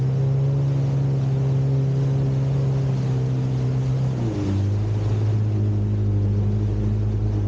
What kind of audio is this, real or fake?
real